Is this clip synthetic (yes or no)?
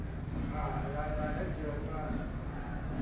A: no